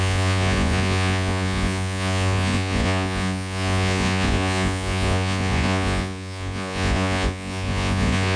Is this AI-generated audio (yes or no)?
yes